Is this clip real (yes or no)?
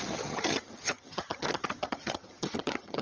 no